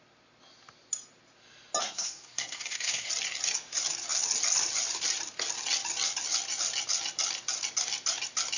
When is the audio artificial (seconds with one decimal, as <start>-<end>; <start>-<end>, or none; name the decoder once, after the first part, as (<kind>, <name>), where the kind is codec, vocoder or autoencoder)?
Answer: 1.8-3.1 (codec, SNAC)